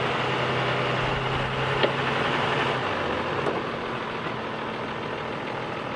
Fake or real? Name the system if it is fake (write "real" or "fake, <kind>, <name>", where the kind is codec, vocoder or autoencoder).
real